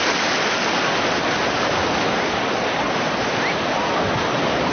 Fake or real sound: real